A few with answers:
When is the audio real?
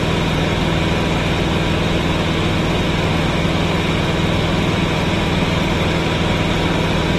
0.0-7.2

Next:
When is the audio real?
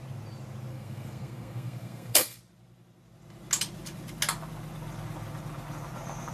0.0-0.7; 2.4-6.3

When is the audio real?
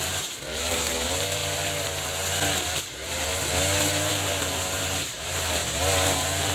1.4-2.8; 3.3-4.1; 5.6-6.5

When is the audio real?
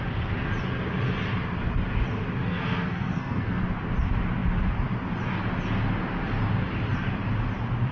0.0-2.4; 3.6-7.9